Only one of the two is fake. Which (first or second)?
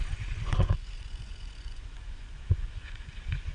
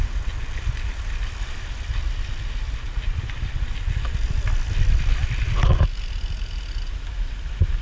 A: first